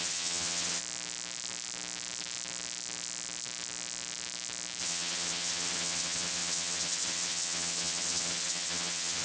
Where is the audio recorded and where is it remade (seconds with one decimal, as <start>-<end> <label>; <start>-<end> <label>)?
0.0-0.8 remade; 0.8-4.8 recorded; 4.8-9.2 remade